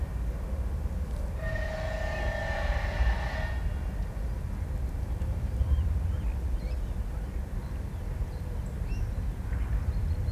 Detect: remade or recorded recorded